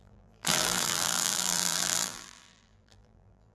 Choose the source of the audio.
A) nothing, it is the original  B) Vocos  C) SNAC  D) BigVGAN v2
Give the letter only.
D